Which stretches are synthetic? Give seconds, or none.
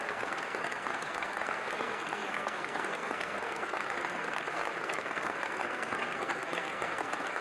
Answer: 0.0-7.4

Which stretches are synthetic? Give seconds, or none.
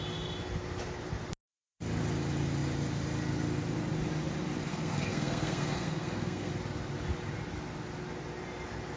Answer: 4.7-6.5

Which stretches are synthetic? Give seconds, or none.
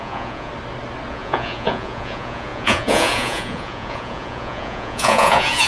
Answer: 0.0-0.5; 1.1-5.7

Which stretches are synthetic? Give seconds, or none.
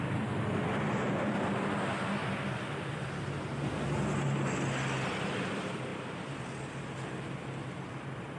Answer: 5.9-6.4